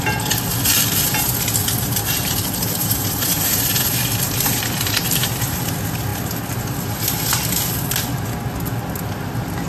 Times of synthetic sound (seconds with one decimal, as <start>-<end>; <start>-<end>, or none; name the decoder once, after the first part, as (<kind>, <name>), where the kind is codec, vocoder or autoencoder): 1.6-5.6 (vocoder, BigVGAN v2)